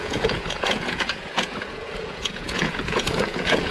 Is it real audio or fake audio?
fake